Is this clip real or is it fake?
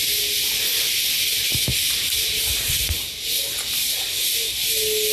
real